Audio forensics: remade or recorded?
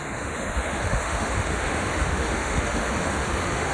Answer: remade